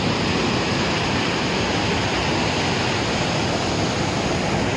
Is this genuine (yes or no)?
yes